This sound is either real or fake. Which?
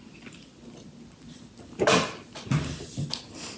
real